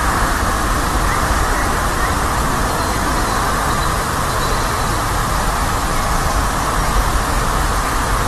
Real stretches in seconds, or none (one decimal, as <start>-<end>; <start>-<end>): 0.0-8.3